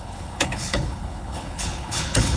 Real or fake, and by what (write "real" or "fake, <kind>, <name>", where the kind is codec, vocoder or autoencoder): fake, codec, HILCodec